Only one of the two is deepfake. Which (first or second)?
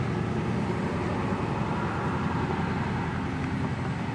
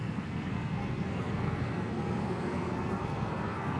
second